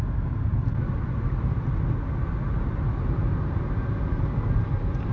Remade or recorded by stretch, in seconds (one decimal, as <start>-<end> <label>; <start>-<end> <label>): 0.0-5.1 recorded